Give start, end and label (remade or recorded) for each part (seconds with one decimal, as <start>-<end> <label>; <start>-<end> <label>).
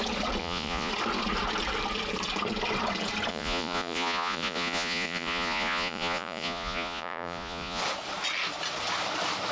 0.0-0.4 recorded; 0.4-0.9 remade; 0.9-3.3 recorded; 3.3-7.8 remade; 7.8-9.5 recorded